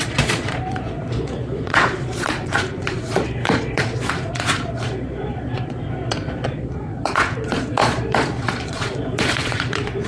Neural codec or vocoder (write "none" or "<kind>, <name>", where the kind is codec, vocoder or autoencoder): vocoder, Vocos